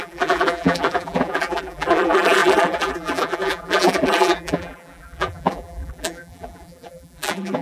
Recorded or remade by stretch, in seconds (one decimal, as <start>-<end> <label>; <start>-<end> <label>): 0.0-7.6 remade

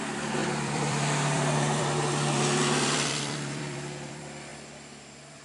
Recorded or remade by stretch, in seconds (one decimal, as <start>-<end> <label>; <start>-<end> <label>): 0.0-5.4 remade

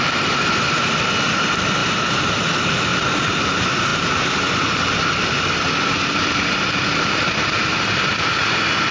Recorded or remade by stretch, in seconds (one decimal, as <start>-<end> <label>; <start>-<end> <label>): 0.0-1.8 recorded; 1.8-2.4 remade; 2.4-2.9 recorded; 2.9-3.5 remade; 3.5-3.9 recorded; 3.9-8.5 remade; 8.5-8.9 recorded

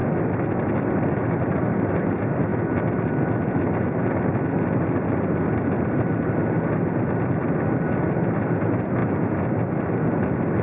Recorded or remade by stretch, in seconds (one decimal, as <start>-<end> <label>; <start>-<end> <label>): 0.0-2.5 remade; 2.5-4.2 recorded; 4.2-6.4 remade; 6.4-8.2 recorded; 8.2-9.0 remade; 9.0-9.8 recorded; 9.8-10.6 remade